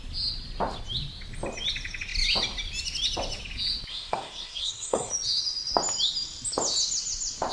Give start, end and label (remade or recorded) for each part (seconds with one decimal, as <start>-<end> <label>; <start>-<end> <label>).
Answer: 0.0-3.9 recorded; 3.9-5.1 remade; 5.1-7.5 recorded